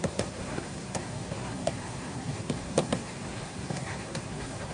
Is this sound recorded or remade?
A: remade